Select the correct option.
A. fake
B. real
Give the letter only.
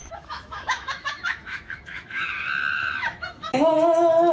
A